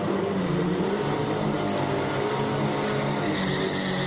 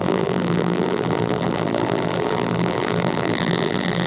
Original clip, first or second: first